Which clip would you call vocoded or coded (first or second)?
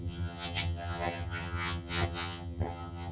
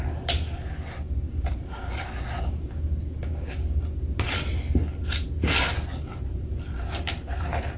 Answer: first